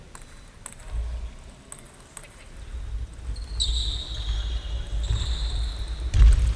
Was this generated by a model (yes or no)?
no